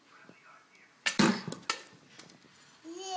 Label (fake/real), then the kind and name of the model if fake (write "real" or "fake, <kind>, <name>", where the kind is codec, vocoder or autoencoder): real